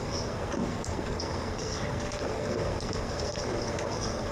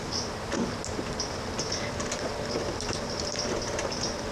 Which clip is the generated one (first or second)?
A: first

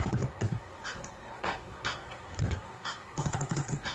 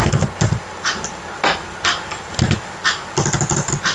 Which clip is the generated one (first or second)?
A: first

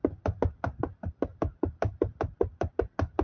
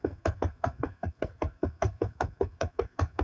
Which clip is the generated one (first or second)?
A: second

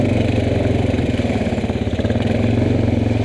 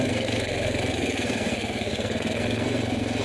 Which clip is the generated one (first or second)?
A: second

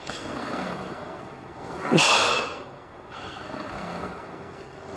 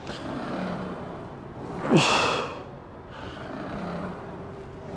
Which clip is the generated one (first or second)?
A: first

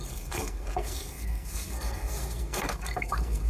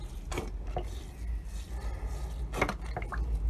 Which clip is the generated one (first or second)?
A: first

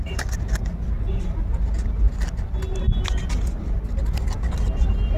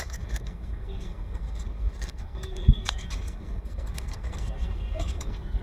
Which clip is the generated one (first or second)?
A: second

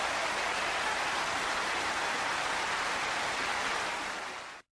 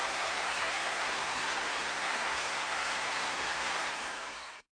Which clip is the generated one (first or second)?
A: second